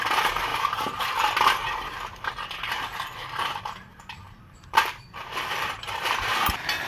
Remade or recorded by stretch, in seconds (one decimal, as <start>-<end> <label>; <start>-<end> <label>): 0.0-1.6 recorded; 1.6-2.3 remade; 2.3-3.2 recorded; 3.2-5.7 remade; 5.7-6.9 recorded